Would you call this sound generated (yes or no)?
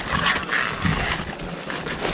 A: no